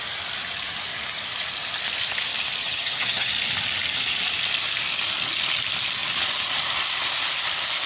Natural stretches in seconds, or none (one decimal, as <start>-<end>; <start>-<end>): 0.0-2.6; 3.3-7.9